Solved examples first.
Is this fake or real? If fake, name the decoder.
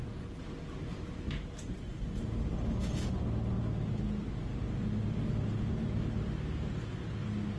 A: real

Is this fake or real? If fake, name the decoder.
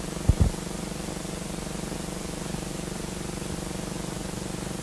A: real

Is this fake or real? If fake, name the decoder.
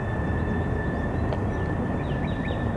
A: real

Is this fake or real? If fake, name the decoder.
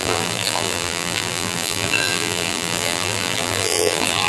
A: fake, vocoder, BigVGAN v2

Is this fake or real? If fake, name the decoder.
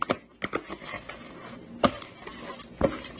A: real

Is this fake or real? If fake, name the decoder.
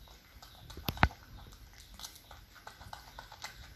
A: real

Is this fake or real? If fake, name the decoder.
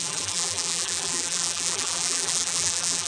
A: fake, vocoder, BigVGAN v2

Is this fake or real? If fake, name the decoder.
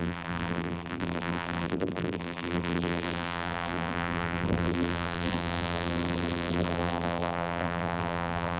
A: fake, vocoder, BigVGAN v2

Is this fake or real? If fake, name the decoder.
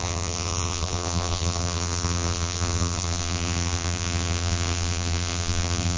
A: fake, vocoder, BigVGAN v2